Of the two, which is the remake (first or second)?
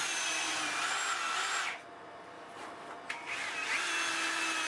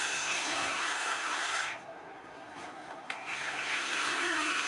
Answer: second